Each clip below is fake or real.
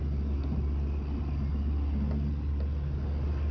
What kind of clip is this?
real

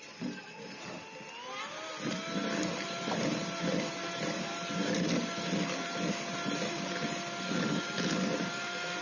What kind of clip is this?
real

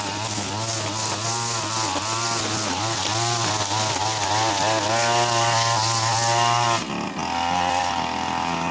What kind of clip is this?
real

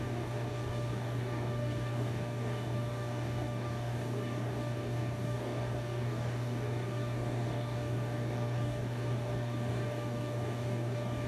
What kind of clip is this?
fake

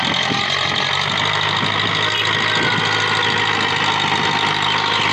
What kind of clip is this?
real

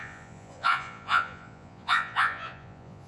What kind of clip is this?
fake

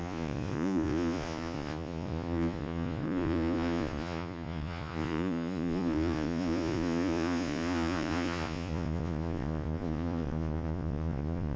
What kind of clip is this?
fake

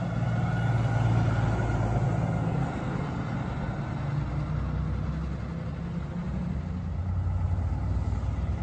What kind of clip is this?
real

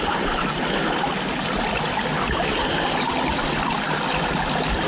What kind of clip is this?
real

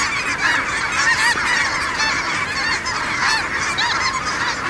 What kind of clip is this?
real